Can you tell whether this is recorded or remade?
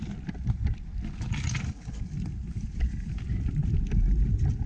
recorded